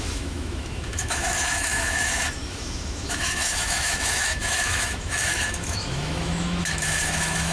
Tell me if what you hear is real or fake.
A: fake